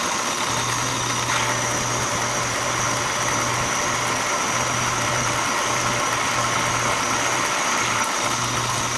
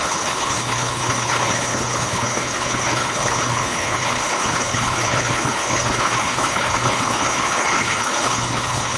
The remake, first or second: second